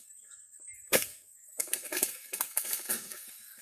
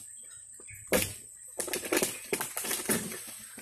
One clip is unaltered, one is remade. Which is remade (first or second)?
first